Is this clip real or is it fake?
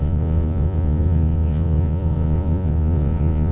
fake